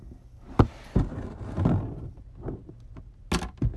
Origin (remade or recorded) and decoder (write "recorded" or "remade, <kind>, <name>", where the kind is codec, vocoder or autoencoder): recorded